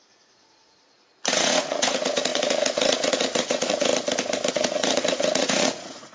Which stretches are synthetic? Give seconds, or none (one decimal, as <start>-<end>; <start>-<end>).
0.0-3.9; 4.5-6.1